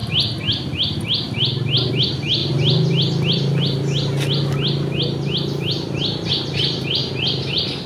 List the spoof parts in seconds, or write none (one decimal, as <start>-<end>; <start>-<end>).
none